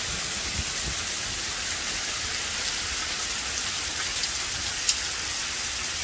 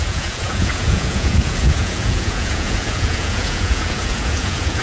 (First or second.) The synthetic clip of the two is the second